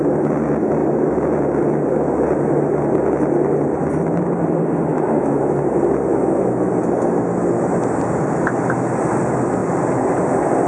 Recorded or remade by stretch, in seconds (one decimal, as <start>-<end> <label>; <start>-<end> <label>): 0.0-4.9 recorded; 4.9-5.4 remade; 5.4-6.1 recorded; 6.1-6.7 remade; 6.7-10.7 recorded